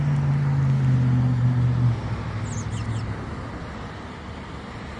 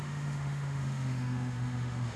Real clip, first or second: first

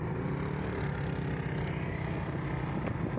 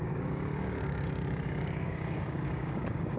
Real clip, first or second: first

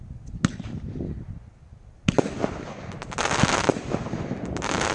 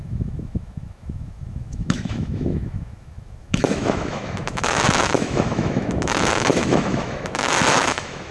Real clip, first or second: first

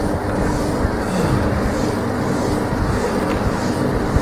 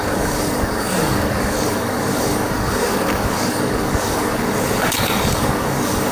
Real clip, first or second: first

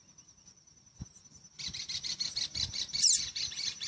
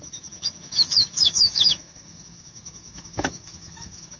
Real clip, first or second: first